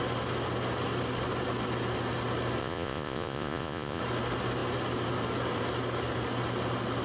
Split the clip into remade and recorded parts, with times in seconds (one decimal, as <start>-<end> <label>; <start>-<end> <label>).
0.0-2.6 recorded; 2.6-4.0 remade; 4.0-7.0 recorded